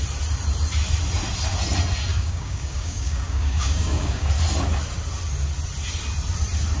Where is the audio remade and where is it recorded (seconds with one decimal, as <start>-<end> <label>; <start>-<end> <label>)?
0.0-2.1 recorded; 2.1-4.3 remade; 4.3-6.8 recorded

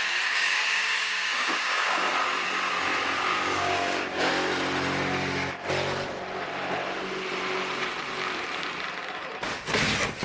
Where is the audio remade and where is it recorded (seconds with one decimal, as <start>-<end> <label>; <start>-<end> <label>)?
0.0-2.1 remade; 2.1-3.3 recorded; 3.3-4.3 remade; 4.3-10.2 recorded

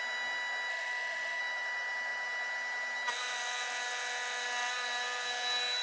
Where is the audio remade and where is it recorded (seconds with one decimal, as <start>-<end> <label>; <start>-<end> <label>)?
0.0-0.7 recorded; 0.7-1.4 remade; 1.4-5.8 recorded

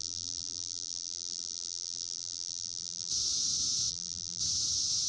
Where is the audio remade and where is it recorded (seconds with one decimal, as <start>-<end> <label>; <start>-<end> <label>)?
0.0-3.1 remade; 3.1-3.9 recorded; 3.9-4.4 remade; 4.4-5.1 recorded

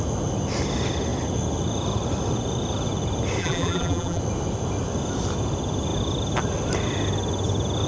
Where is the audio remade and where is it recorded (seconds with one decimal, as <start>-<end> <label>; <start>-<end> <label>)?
0.0-3.4 recorded; 3.4-4.2 remade; 4.2-7.9 recorded